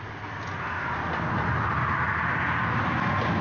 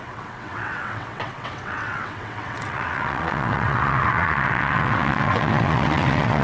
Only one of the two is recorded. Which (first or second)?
first